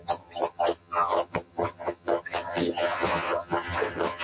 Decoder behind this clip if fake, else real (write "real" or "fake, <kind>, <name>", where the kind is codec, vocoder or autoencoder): fake, vocoder, HiFi-GAN